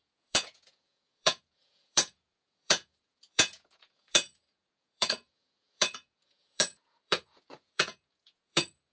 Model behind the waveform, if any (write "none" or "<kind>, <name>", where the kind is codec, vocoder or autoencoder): vocoder, Vocos